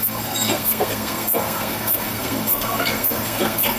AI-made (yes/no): yes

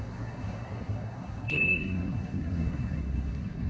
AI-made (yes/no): yes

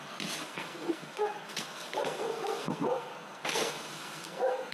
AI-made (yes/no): yes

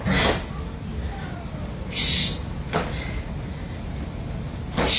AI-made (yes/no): no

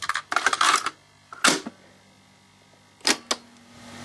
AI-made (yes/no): no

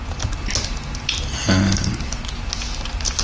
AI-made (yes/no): no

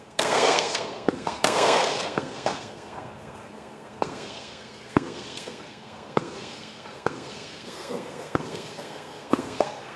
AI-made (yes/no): yes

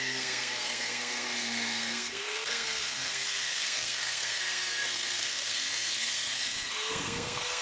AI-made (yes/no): yes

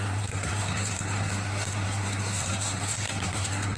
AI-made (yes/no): yes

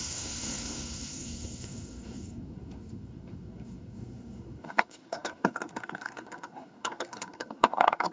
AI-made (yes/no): yes